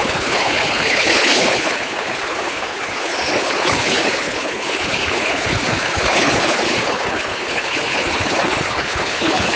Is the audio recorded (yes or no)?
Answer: no